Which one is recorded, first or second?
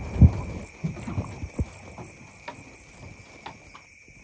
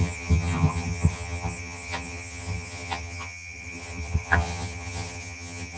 first